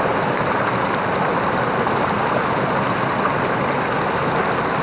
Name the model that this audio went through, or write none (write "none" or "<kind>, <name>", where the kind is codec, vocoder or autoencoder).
none